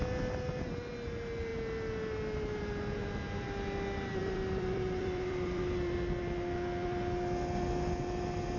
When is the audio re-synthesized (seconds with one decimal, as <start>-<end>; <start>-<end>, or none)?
4.2-5.6